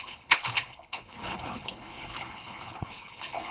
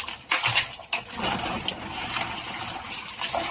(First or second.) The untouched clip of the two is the second